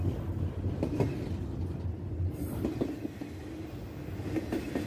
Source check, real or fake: real